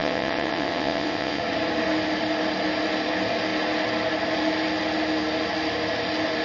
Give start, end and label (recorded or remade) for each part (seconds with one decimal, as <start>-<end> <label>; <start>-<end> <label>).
0.0-1.4 remade; 1.4-6.4 recorded